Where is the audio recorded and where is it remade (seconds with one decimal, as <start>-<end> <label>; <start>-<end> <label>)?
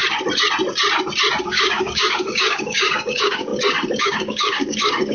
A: 0.0-1.4 recorded; 1.4-3.5 remade; 3.5-4.0 recorded; 4.0-5.1 remade